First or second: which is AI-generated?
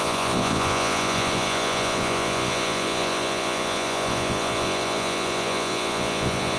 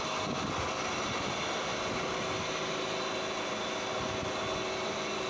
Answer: first